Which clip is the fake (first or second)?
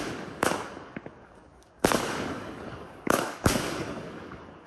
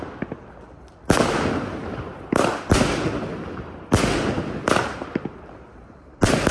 first